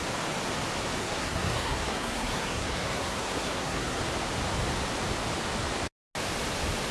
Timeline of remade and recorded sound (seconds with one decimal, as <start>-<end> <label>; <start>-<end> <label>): 0.0-1.0 recorded; 1.0-4.0 remade; 4.0-6.9 recorded